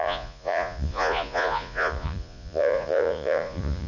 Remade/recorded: remade